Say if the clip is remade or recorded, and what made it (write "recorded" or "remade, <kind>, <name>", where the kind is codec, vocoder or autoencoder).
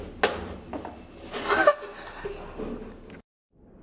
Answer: recorded